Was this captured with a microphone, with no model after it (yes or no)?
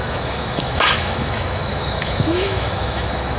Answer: no